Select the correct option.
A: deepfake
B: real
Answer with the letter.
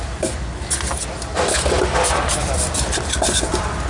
A